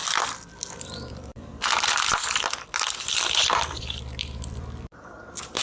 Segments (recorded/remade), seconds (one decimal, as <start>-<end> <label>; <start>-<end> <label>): 0.0-5.6 remade